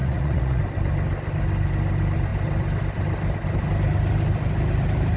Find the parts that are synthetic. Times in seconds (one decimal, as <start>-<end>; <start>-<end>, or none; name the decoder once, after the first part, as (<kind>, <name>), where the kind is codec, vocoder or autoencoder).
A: 0.0-0.6 (vocoder, Vocos)